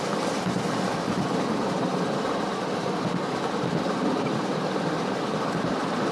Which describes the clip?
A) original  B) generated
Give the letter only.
A